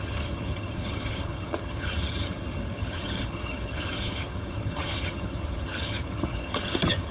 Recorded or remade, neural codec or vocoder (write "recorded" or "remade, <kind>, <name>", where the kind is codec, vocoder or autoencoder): remade, vocoder, HiFi-GAN